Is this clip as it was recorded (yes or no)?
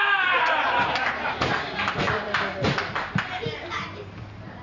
yes